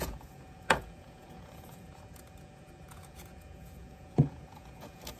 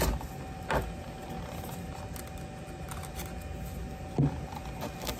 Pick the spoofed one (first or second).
first